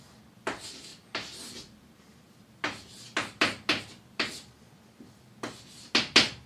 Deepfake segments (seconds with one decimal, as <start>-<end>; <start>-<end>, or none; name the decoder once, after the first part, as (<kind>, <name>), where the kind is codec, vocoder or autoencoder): none